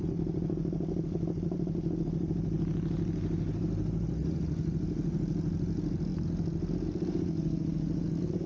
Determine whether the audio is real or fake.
real